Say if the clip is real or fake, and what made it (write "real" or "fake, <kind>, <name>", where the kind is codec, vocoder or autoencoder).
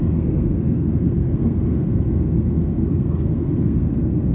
fake, codec, SNAC